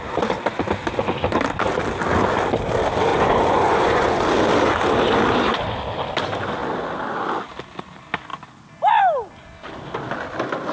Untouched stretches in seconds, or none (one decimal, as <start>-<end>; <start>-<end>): 0.0-3.1; 4.2-10.7